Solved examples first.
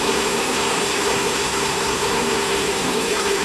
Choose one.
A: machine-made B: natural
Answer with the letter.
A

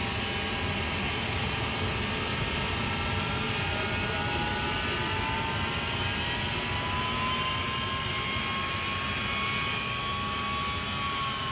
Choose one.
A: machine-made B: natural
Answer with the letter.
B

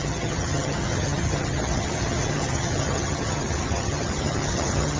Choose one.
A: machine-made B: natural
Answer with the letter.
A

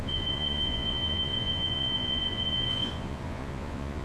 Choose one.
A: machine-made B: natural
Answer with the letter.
A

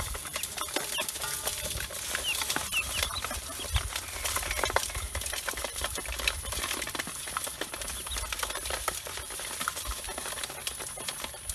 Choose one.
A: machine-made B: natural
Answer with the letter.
B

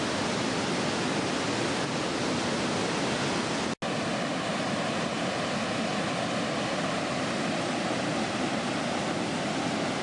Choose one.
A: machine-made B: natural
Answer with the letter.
B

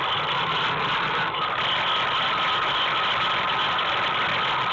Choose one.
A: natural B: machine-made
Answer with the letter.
A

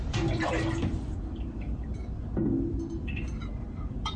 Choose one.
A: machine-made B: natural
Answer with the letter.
A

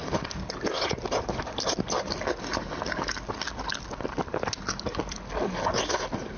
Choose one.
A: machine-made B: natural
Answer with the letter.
B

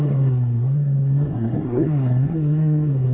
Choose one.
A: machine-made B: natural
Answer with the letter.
A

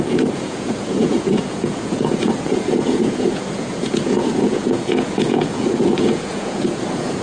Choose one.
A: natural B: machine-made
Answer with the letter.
B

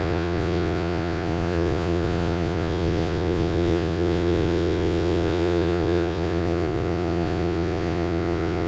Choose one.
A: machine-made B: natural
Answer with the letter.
A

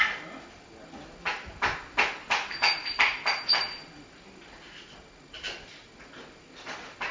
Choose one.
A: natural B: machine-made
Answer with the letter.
A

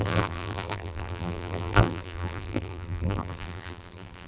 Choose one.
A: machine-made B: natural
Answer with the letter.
A